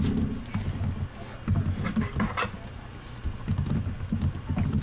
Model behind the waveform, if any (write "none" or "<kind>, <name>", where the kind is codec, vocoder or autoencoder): none